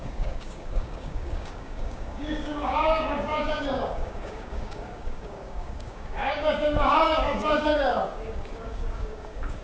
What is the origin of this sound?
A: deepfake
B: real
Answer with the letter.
A